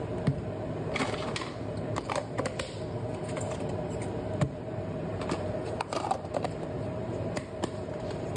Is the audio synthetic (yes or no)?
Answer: yes